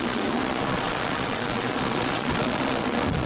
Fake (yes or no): yes